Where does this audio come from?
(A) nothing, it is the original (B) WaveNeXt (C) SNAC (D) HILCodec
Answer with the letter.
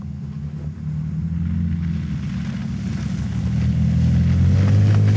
A